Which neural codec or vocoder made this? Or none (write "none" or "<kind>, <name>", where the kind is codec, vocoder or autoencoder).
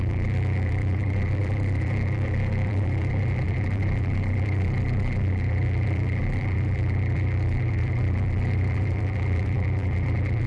vocoder, BigVGAN v2